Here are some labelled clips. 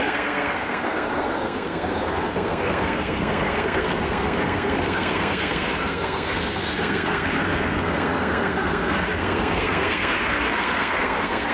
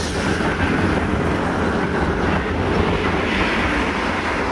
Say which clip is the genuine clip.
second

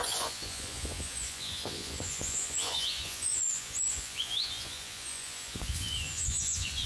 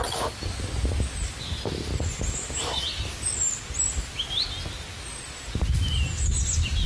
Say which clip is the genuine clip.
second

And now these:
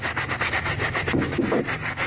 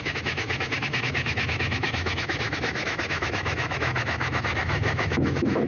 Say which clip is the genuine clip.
first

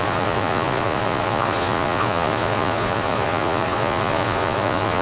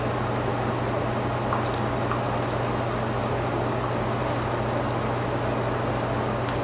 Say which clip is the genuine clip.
second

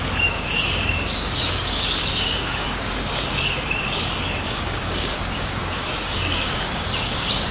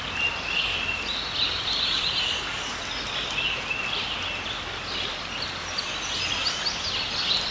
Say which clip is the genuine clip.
second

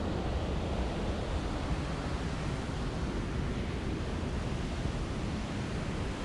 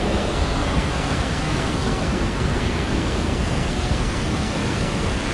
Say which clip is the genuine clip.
first